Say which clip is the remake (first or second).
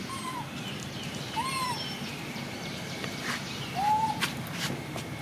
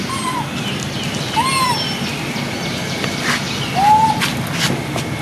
first